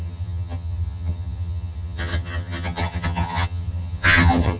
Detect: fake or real fake